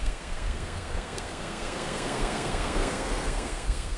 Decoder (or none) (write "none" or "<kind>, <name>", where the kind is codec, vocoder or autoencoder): codec, SNAC